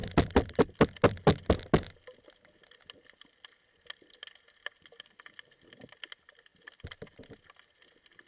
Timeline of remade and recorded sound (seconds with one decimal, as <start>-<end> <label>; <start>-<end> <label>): 0.0-8.3 recorded